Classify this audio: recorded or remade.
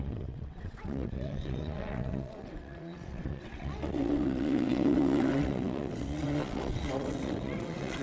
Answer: remade